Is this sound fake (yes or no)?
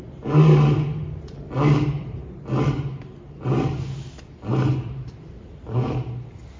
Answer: no